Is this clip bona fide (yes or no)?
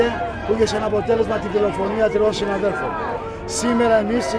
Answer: yes